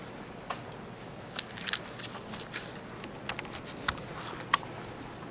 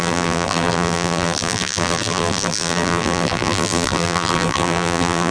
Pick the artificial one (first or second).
second